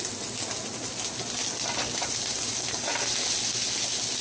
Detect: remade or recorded recorded